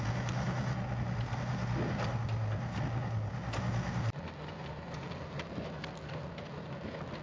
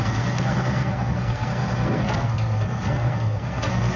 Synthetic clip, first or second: second